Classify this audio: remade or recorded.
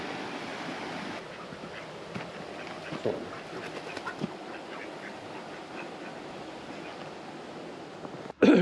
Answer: recorded